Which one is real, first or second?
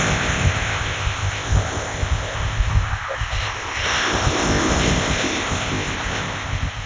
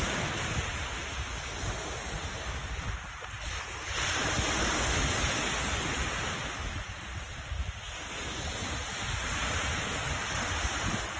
second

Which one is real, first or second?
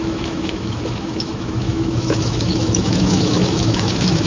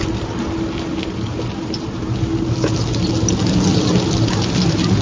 second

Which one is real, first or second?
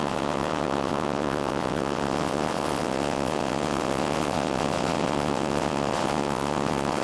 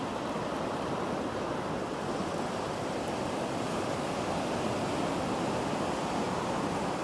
second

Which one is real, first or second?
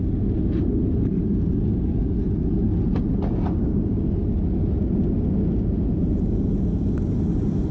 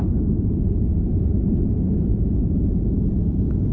first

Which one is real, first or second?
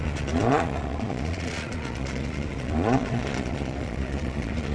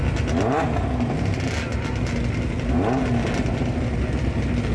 second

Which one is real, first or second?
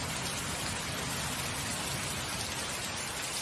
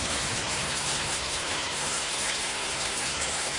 first